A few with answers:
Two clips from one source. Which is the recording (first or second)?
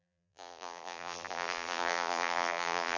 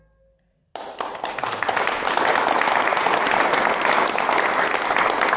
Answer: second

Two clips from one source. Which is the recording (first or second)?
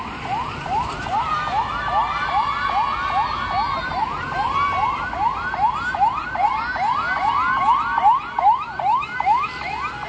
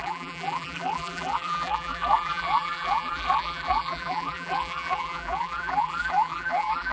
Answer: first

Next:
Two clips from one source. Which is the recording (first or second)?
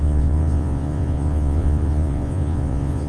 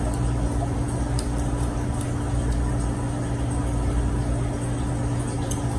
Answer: second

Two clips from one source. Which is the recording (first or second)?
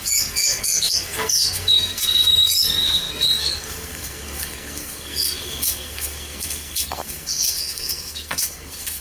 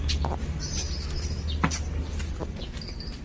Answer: second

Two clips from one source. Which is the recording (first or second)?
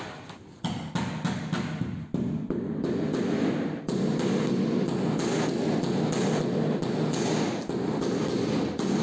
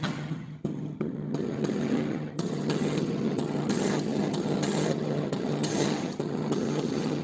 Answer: first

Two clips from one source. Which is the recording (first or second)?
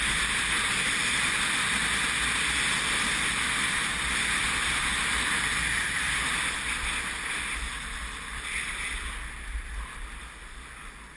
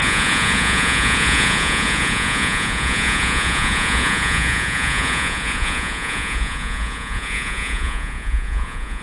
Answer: first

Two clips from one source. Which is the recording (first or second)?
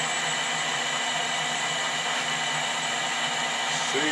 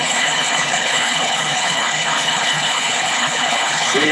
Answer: first